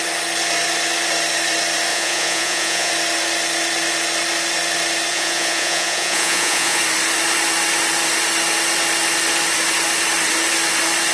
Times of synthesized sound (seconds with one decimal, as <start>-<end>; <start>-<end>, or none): 1.9-2.9; 5.1-6.8